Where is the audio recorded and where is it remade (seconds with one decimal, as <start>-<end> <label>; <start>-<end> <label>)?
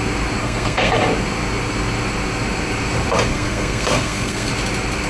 0.0-0.4 recorded; 0.4-1.0 remade; 1.0-3.3 recorded; 3.3-4.5 remade; 4.5-5.1 recorded